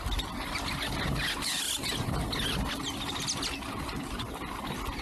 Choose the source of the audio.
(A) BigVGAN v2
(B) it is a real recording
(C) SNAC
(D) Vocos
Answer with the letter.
B